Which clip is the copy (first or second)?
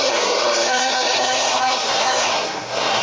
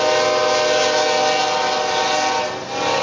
first